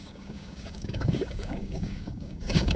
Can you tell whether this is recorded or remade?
remade